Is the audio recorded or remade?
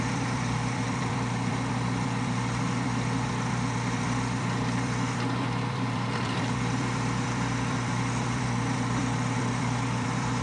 remade